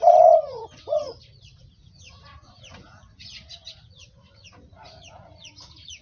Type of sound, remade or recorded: remade